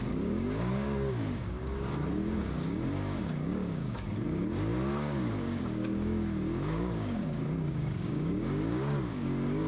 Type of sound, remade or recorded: remade